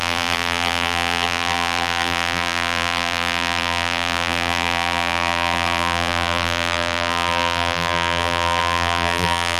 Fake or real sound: fake